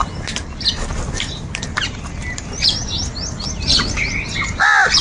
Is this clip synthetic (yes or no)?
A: no